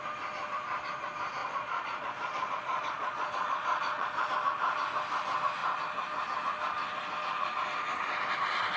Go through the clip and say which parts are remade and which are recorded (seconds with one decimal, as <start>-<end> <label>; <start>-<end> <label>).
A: 0.0-1.4 recorded; 1.4-4.3 remade; 4.3-8.8 recorded